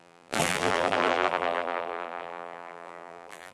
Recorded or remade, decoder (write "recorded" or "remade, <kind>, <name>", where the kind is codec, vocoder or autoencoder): remade, vocoder, BigVGAN v2